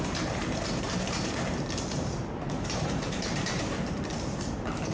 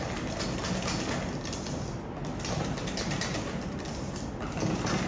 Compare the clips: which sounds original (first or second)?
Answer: second